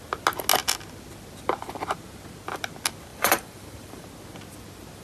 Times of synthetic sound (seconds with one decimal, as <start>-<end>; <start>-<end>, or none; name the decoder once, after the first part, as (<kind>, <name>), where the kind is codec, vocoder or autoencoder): 3.1-4.1 (vocoder, BigVGAN v2)